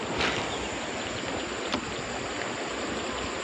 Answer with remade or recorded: recorded